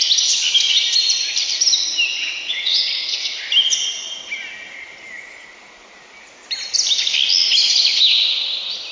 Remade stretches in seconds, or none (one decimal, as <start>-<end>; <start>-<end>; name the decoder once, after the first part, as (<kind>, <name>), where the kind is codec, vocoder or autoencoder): 2.1-3.4 (vocoder, WaveNeXt)